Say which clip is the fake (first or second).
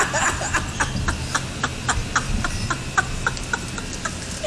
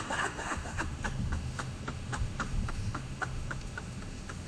second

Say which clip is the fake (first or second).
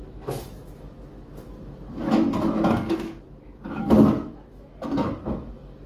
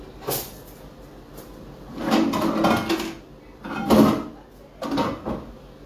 first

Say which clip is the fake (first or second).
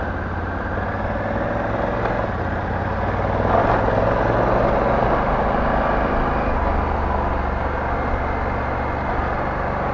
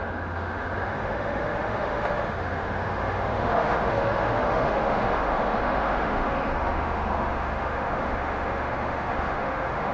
second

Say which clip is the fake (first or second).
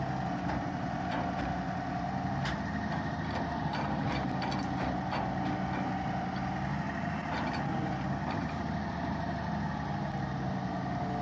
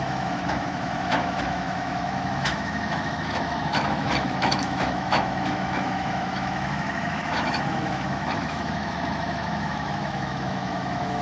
second